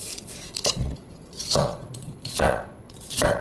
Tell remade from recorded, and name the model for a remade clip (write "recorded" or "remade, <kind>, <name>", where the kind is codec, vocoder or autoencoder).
remade, vocoder, Vocos